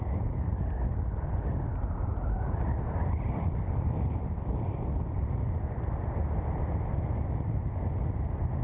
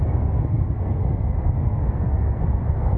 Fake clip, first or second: second